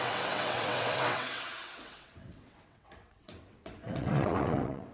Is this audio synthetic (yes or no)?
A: yes